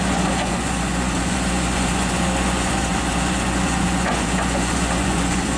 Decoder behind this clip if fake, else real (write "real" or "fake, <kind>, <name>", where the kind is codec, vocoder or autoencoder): fake, vocoder, Vocos